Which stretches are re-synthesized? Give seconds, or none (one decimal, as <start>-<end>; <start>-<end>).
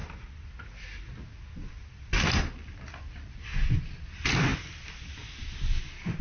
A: none